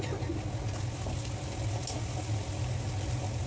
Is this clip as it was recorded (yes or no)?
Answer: yes